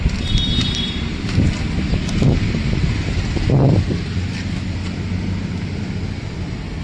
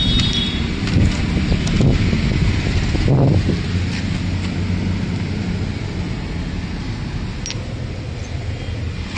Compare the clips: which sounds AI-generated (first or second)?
first